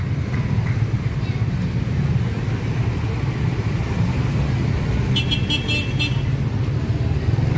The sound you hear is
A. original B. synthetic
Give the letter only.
A